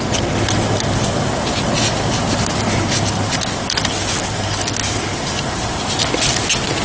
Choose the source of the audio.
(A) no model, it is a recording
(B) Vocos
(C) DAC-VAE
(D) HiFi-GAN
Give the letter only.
A